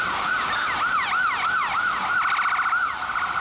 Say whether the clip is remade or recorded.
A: recorded